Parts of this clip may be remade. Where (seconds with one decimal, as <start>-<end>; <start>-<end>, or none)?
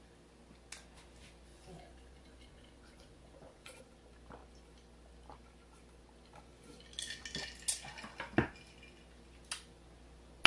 1.5-3.8